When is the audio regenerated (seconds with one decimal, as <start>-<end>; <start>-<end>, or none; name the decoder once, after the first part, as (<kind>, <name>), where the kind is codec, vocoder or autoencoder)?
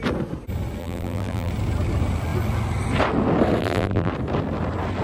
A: 0.8-1.5 (vocoder, BigVGAN v2); 3.6-4.1